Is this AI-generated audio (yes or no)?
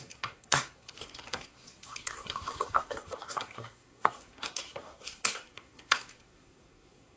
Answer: yes